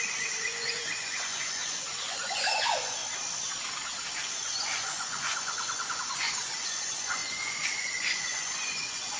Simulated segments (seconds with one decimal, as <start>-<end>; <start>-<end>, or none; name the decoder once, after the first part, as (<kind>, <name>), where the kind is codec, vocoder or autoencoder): 0.0-3.0 (vocoder, Vocos); 4.2-9.2